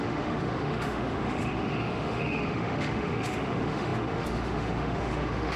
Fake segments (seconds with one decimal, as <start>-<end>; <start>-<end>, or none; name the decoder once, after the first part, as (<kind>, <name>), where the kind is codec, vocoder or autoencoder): 0.0-5.6 (autoencoder, DAC-VAE)